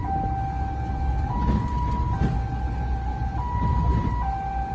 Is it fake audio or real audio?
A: real